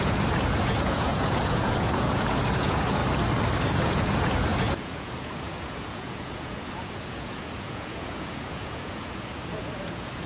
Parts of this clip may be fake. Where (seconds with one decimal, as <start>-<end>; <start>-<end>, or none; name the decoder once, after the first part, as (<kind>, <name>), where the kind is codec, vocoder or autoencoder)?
0.0-3.0 (vocoder, Vocos); 3.7-10.3